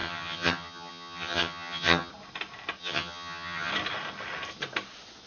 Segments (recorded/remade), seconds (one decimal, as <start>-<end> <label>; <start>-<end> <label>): 0.0-2.1 remade; 2.1-2.8 recorded; 2.8-3.7 remade; 3.7-5.3 recorded